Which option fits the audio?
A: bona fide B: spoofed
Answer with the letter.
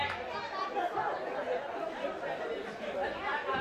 A